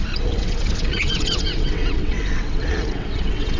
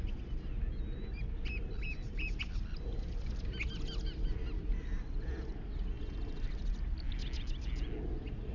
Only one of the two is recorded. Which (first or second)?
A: second